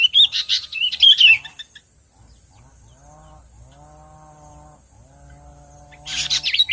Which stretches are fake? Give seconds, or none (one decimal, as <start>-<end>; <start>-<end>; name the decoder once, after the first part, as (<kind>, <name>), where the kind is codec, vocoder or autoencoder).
5.5-6.7 (vocoder, BigVGAN v2)